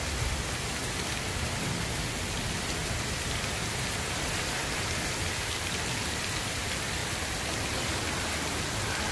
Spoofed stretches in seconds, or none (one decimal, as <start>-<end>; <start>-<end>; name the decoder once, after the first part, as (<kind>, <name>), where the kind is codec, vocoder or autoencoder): none